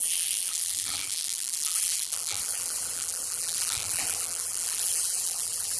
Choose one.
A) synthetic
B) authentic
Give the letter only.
A